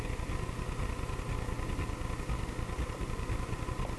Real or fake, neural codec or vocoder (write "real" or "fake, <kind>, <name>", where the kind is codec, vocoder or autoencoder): real